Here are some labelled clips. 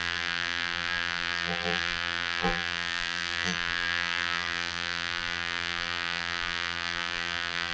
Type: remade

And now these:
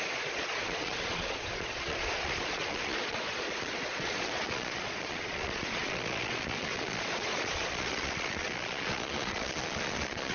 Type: remade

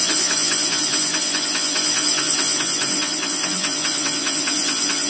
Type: remade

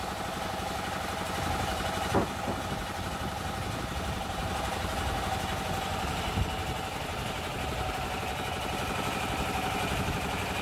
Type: recorded